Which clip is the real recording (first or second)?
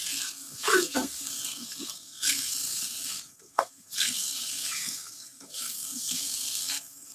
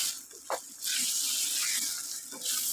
second